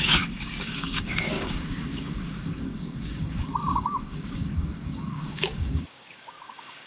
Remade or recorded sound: remade